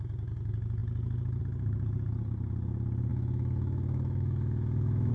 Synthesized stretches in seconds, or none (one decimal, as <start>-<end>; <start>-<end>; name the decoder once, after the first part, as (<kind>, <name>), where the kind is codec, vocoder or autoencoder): 3.1-5.1 (autoencoder, DAC-VAE)